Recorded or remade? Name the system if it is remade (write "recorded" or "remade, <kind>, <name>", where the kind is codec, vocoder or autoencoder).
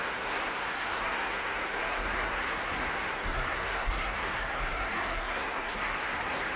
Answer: remade, codec, SNAC